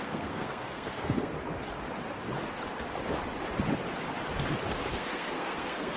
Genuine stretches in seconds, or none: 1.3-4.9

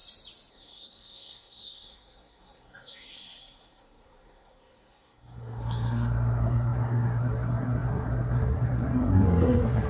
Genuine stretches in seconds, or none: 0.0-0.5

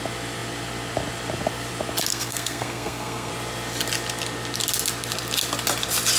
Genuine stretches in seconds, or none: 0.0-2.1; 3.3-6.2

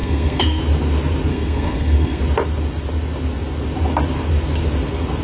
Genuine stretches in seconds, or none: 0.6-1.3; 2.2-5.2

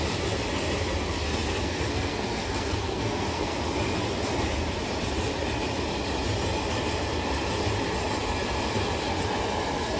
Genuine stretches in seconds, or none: 0.0-1.6; 3.6-10.0

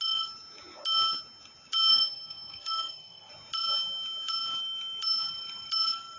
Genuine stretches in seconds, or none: 0.0-1.9; 3.3-6.2